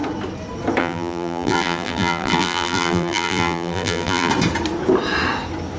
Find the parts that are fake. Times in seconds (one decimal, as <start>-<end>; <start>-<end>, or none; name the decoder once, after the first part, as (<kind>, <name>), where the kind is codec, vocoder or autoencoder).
0.8-4.3 (vocoder, BigVGAN v2)